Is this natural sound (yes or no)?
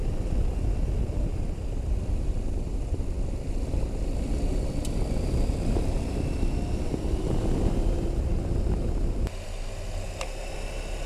yes